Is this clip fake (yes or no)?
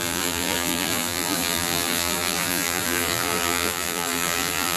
yes